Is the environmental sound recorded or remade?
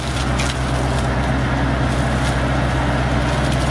recorded